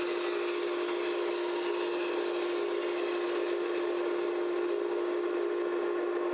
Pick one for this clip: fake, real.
real